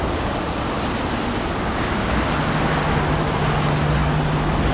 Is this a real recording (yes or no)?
yes